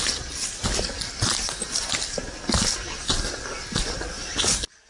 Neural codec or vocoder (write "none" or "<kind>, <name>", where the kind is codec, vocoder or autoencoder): none